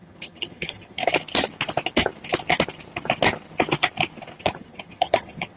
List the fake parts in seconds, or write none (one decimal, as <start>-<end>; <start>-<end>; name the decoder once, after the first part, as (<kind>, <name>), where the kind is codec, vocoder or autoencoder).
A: 0.0-1.0 (vocoder, HiFi-GAN); 4.4-5.6